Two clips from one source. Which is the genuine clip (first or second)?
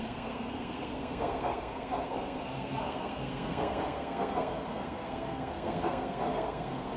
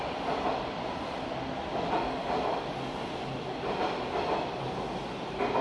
second